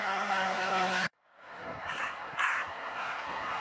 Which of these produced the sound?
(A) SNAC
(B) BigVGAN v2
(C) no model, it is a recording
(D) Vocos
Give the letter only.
A